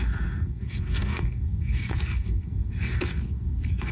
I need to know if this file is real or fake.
fake